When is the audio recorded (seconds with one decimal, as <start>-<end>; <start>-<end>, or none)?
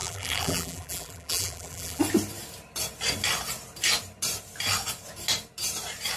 2.0-6.2